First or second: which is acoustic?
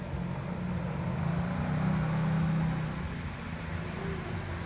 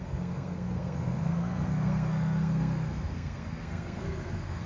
first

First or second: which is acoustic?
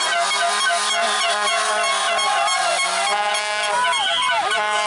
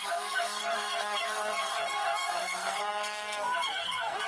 first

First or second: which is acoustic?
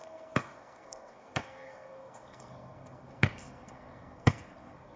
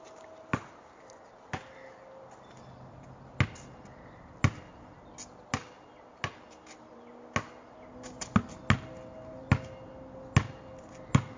second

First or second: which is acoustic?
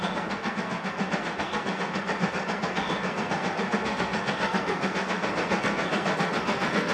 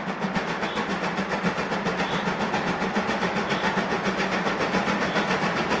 second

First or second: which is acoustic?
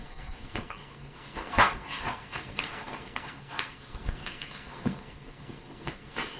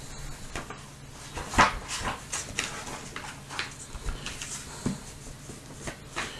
second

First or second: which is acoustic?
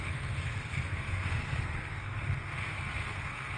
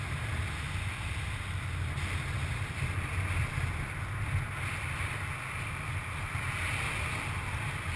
second